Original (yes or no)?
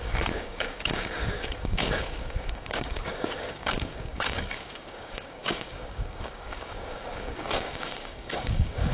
no